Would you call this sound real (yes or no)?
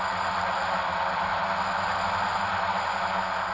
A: yes